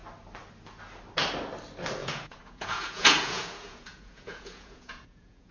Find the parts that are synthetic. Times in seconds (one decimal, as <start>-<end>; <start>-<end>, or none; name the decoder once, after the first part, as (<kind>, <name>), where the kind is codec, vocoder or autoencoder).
2.0-5.5 (vocoder, Vocos)